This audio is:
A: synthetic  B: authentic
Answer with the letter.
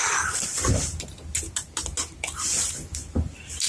B